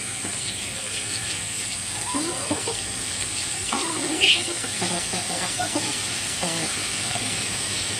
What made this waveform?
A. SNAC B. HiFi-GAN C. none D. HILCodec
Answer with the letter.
A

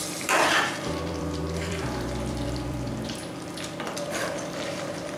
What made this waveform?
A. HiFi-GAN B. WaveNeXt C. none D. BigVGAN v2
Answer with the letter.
D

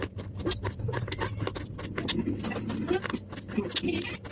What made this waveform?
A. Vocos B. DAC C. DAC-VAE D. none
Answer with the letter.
D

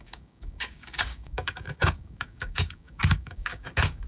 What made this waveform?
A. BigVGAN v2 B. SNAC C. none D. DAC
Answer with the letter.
D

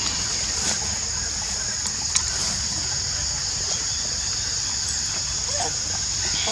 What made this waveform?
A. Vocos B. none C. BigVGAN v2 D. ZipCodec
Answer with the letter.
B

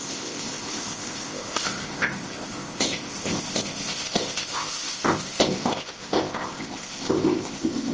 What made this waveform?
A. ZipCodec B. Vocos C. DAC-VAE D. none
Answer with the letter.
A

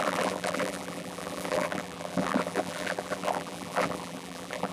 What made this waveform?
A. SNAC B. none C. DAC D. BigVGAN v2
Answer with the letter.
D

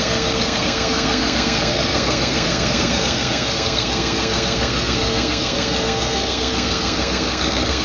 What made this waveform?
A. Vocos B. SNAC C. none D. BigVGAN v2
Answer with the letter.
B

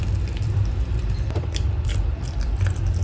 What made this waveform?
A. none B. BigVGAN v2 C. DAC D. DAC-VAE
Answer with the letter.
B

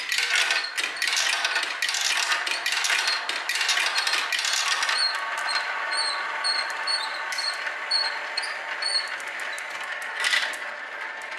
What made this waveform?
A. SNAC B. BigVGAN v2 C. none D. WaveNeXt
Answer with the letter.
C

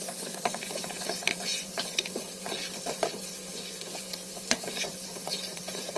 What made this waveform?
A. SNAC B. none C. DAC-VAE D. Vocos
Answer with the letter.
D